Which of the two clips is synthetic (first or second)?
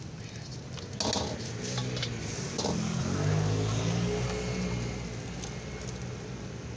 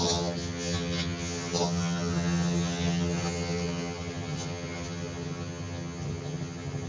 second